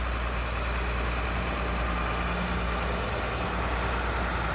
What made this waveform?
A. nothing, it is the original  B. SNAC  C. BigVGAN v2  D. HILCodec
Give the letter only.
A